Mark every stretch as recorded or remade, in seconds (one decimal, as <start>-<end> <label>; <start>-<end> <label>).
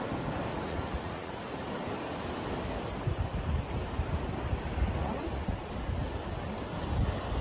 0.0-0.5 recorded; 0.5-1.3 remade; 1.3-5.0 recorded; 5.0-5.7 remade; 5.7-7.4 recorded